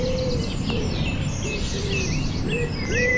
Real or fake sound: real